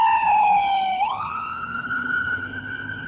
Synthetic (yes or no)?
yes